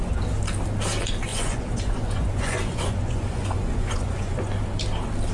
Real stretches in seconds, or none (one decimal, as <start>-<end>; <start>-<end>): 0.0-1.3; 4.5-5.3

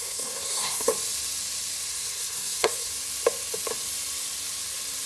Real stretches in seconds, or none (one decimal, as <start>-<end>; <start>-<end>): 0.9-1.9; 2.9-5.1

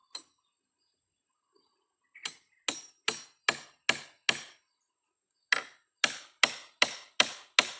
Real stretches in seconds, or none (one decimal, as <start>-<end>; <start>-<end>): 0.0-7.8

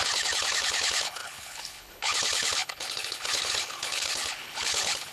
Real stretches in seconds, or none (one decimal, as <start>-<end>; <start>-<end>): none

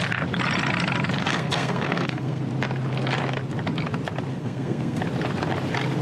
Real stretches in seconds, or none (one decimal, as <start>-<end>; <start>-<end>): 0.0-1.2; 2.4-4.3; 5.0-6.0

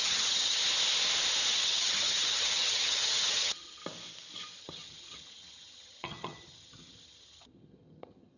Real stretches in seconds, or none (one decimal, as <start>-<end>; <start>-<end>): 0.6-1.5; 3.8-4.6

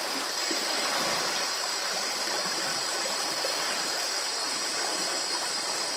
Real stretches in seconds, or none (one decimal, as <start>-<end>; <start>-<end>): 0.0-2.7

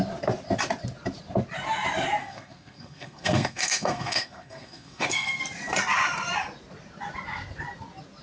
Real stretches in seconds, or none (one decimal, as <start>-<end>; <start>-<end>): 0.0-2.2; 5.4-8.2